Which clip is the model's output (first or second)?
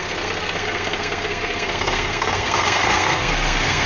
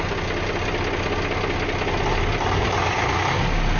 first